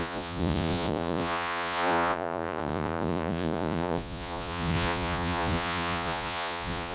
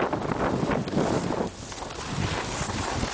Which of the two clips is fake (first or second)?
first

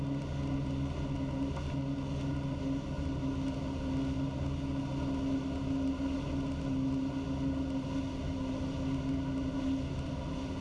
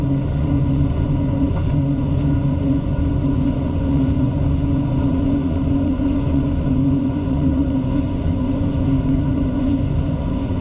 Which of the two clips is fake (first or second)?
second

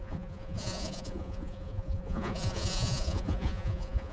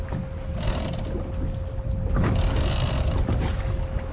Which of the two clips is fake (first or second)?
first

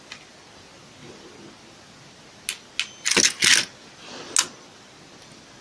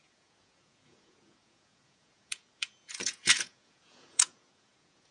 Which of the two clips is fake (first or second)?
second